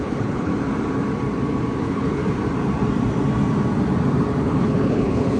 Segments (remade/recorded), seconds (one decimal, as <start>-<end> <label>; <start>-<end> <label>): 0.0-0.5 remade; 0.5-1.8 recorded; 1.8-2.2 remade; 2.2-4.4 recorded; 4.4-5.4 remade